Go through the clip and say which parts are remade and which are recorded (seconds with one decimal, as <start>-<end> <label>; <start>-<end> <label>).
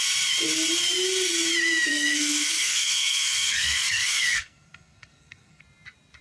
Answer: 0.0-1.9 recorded; 1.9-5.6 remade; 5.6-6.2 recorded